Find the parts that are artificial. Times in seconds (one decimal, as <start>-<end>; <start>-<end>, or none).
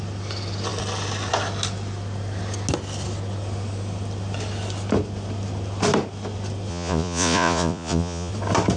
6.7-8.3